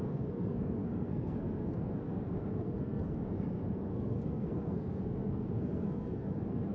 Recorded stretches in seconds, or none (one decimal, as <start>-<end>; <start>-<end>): none